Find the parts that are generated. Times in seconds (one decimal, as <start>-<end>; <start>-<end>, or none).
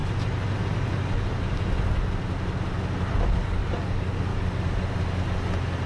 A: 3.3-4.3